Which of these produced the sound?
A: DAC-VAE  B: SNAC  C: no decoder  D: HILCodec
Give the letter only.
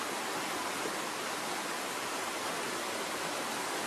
C